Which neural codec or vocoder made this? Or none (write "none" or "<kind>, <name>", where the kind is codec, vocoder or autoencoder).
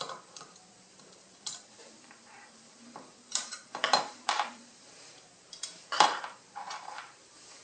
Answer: vocoder, BigVGAN v2